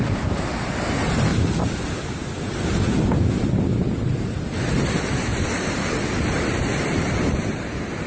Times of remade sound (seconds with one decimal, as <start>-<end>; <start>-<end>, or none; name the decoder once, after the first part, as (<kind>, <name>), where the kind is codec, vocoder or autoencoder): none